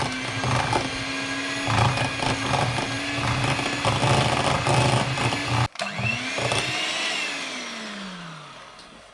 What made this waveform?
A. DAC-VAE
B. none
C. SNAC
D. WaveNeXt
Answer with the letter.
B